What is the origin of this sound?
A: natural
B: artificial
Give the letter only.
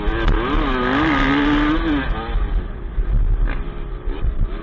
A